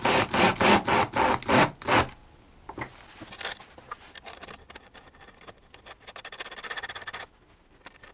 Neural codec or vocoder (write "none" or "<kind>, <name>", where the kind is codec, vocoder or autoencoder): none